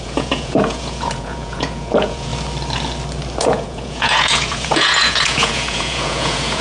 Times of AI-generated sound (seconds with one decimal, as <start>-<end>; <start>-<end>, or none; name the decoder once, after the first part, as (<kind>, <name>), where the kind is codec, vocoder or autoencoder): 0.0-2.3 (vocoder, Vocos); 3.4-6.6